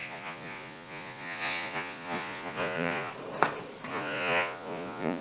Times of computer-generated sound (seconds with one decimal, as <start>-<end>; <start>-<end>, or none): 0.0-3.1; 3.9-5.2